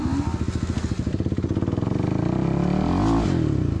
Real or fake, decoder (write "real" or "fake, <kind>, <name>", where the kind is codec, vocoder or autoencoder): real